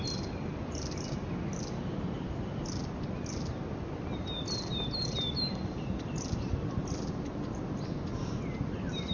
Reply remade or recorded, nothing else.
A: recorded